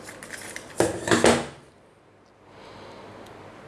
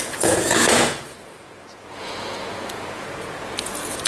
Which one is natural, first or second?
first